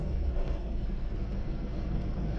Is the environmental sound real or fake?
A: fake